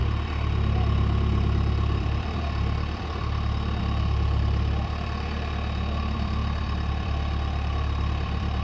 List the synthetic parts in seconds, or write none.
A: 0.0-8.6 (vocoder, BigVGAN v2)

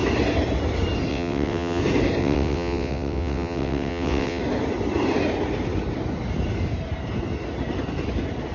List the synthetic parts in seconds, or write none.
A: 1.1-1.8 (vocoder, WaveNeXt); 2.2-4.4